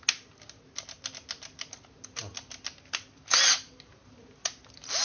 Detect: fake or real real